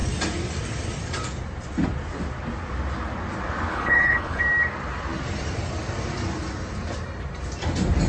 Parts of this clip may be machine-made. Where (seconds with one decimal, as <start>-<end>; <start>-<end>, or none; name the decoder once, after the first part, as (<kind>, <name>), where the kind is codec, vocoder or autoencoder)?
3.7-4.4 (codec, HILCodec)